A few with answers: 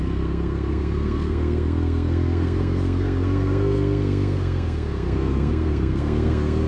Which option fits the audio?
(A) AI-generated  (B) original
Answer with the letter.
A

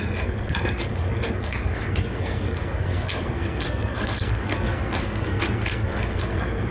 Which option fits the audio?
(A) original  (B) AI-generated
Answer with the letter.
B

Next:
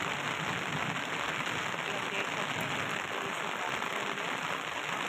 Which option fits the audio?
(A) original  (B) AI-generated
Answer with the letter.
A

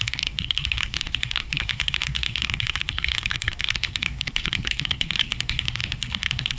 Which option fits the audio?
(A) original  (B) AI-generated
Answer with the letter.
B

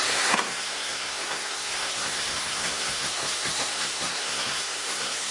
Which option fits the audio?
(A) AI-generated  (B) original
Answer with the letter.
A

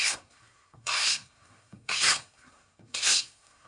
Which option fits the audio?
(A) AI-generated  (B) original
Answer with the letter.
A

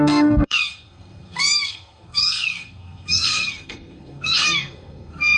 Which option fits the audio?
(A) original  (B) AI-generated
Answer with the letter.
B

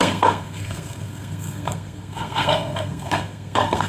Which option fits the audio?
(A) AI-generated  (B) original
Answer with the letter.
A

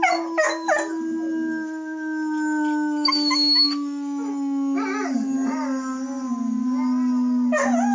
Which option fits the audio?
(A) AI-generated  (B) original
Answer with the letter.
B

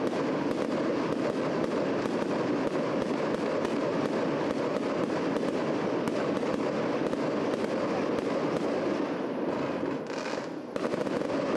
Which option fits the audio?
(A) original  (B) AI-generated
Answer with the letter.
A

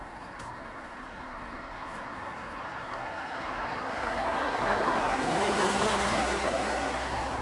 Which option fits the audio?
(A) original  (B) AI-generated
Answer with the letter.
B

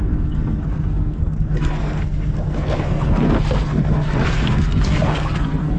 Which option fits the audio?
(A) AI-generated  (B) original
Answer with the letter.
A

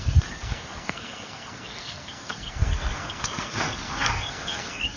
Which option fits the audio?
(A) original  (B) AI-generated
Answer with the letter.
B